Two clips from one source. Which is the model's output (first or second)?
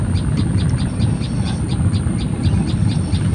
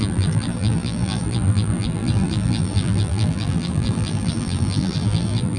second